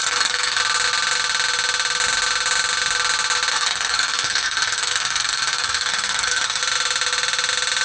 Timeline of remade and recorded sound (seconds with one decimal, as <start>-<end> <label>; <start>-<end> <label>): 0.0-0.6 remade; 0.6-3.5 recorded; 3.5-6.6 remade; 6.6-7.8 recorded